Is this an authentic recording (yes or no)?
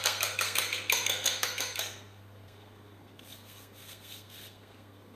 no